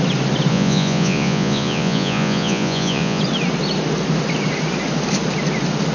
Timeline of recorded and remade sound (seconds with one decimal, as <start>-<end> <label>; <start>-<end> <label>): 0.0-0.5 recorded; 0.5-3.2 remade; 3.2-5.9 recorded